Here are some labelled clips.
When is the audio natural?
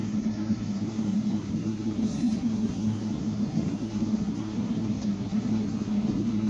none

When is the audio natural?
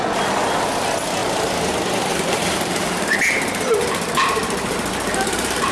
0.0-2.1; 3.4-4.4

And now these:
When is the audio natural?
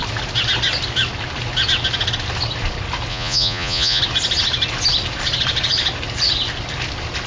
0.0-3.1; 4.0-7.3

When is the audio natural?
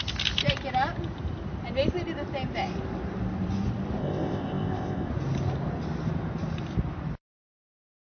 0.0-4.0; 5.1-8.0